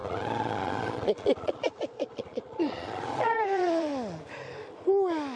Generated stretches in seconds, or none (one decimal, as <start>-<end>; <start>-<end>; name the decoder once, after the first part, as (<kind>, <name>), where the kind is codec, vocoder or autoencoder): 0.0-3.9 (vocoder, Vocos)